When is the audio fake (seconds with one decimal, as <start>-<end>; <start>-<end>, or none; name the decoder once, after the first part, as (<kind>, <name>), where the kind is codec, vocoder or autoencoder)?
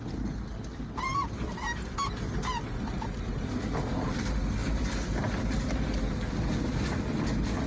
none